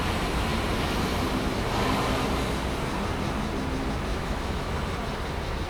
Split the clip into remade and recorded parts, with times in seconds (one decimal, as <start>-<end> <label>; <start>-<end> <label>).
0.0-4.1 recorded; 4.1-4.7 remade; 4.7-5.7 recorded